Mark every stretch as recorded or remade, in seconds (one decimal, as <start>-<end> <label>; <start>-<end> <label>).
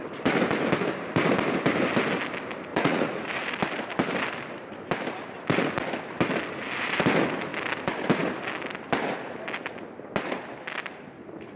0.0-2.7 recorded; 2.7-3.2 remade; 3.2-11.6 recorded